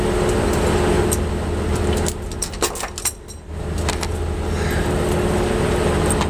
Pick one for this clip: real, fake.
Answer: real